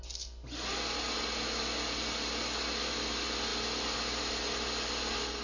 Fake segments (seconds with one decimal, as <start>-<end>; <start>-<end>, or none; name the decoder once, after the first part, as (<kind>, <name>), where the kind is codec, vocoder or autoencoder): none